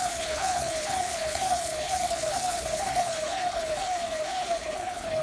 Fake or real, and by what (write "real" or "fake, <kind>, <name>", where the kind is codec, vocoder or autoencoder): fake, codec, HILCodec